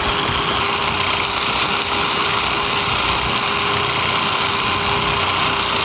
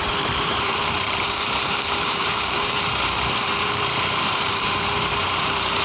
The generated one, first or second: second